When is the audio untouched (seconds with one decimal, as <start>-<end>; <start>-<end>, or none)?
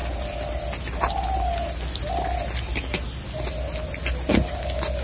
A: 0.0-5.0